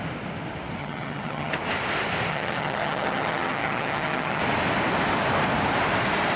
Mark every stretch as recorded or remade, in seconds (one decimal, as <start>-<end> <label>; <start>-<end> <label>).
0.0-0.8 recorded; 0.8-1.5 remade; 1.5-2.3 recorded; 2.3-4.4 remade; 4.4-6.4 recorded

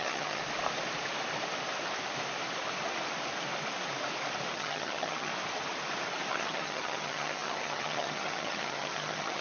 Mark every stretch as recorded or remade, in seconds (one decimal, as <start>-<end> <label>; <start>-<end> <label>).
0.0-0.4 remade; 0.4-4.5 recorded; 4.5-5.3 remade; 5.3-6.3 recorded; 6.3-9.4 remade

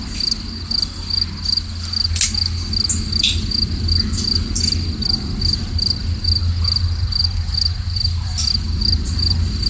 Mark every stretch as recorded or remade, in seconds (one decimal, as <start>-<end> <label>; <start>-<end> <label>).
0.0-9.7 recorded